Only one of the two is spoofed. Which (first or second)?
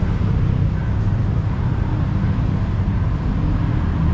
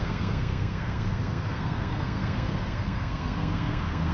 second